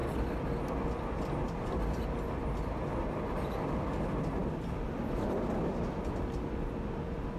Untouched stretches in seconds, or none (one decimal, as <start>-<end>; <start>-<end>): 0.0-7.4